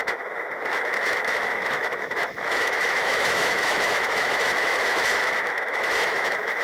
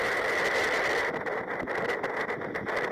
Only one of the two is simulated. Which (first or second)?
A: first